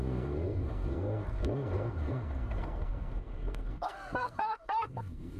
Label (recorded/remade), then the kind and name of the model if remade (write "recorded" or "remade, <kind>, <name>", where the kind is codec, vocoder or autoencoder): remade, codec, SNAC